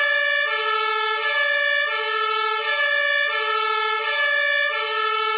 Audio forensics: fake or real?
real